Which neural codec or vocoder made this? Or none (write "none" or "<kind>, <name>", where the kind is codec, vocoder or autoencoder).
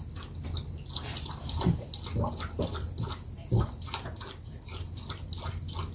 none